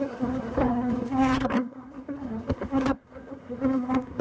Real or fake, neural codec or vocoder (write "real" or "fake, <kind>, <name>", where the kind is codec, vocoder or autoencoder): fake, codec, SNAC